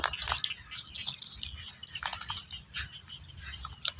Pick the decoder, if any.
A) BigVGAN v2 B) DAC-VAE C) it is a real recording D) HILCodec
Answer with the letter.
C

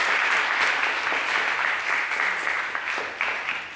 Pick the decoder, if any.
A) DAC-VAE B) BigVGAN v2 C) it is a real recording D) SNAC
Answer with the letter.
C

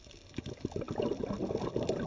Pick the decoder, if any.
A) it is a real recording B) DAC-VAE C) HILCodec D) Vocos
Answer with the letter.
A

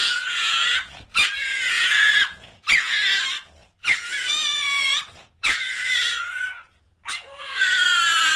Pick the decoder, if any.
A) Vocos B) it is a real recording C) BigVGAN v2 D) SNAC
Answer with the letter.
A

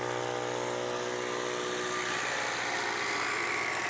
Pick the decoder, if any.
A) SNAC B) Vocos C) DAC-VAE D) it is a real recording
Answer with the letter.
D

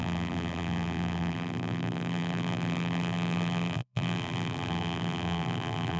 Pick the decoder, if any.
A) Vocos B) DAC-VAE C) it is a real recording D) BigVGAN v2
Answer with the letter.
D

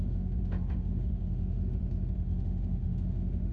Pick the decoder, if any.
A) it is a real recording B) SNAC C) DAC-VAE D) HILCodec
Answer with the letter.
C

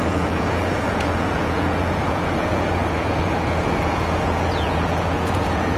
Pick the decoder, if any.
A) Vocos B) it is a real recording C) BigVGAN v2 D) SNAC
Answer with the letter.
A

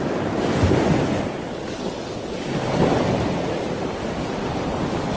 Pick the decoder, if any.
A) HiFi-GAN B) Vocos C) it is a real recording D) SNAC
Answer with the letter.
C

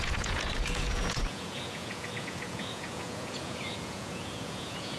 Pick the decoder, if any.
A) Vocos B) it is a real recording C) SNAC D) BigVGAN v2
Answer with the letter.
A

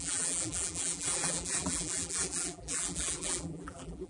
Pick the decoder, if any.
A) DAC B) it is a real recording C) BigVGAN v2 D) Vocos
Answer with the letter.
C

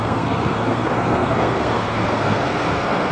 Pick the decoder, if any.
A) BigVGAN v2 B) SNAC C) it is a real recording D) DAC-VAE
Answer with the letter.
B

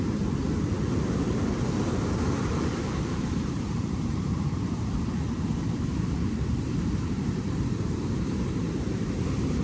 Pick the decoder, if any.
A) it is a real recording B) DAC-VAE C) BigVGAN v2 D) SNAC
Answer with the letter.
C